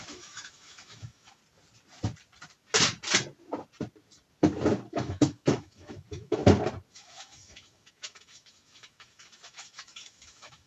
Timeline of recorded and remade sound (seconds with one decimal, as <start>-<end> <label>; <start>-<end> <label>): 0.0-1.4 remade; 1.4-4.9 recorded; 4.9-6.4 remade; 6.4-6.9 recorded; 6.9-10.7 remade